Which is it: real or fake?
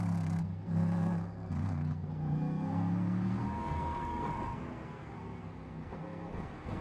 fake